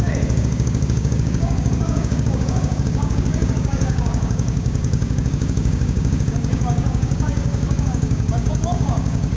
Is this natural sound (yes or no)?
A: no